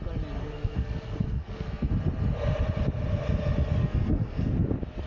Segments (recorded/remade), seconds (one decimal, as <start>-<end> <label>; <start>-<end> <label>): 0.0-0.4 recorded; 0.4-1.9 remade; 1.9-3.8 recorded; 3.8-4.5 remade; 4.5-5.1 recorded